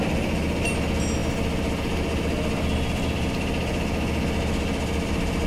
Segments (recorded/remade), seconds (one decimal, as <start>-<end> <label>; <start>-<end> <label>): 0.0-5.5 recorded